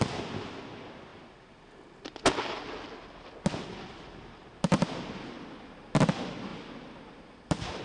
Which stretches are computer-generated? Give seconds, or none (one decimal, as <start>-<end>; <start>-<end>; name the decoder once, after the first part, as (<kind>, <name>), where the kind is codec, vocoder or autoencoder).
none